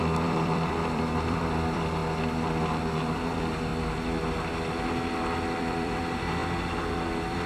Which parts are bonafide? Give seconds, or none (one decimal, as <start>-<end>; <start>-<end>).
2.0-2.9; 3.7-5.1; 6.4-6.9